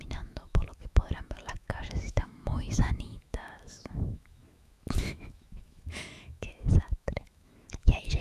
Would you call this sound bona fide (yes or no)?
no